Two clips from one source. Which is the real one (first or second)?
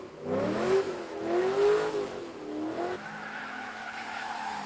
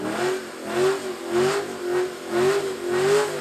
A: second